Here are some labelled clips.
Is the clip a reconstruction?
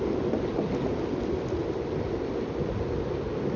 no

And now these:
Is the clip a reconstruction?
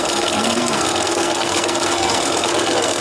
yes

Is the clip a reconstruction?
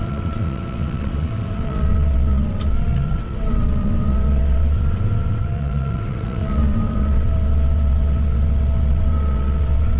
yes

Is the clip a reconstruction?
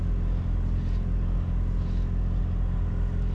no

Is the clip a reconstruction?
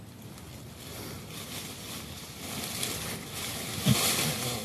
no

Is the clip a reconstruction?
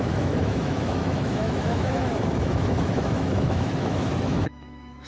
yes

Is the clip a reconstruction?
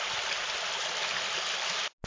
no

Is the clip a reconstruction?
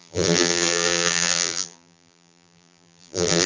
yes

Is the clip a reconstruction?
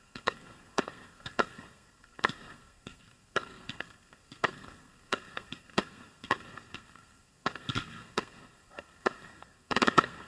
yes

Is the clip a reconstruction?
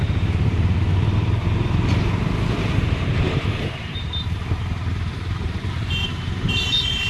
yes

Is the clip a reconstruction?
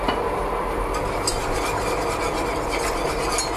no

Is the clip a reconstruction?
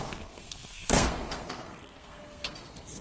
yes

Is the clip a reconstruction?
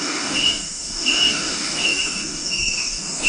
yes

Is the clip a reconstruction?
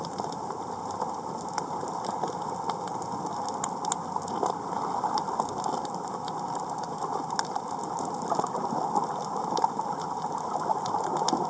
no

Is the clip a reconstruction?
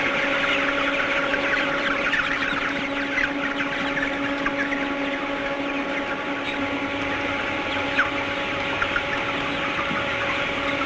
no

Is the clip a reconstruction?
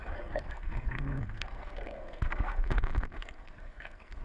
yes